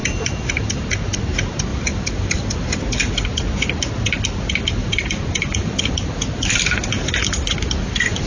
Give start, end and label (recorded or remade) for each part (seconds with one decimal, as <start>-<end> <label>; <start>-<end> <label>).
0.0-0.8 remade; 0.8-1.7 recorded; 1.7-2.7 remade; 2.7-4.8 recorded; 4.8-6.6 remade; 6.6-8.3 recorded